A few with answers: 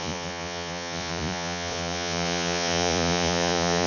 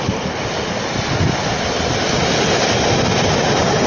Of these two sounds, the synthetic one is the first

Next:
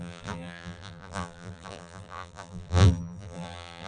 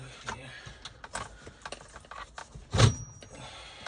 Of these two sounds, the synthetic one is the first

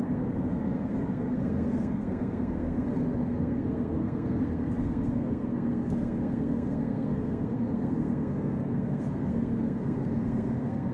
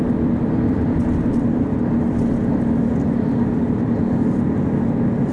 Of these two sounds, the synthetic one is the first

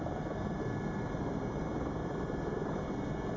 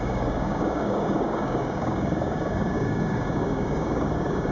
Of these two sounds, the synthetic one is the second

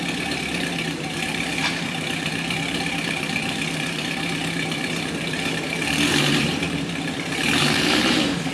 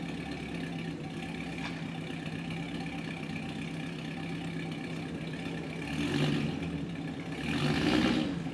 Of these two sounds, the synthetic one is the first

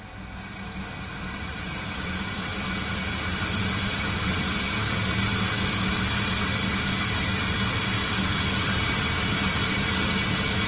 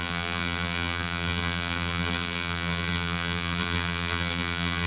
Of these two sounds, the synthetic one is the second